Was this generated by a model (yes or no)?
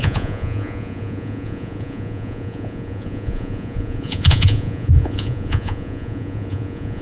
yes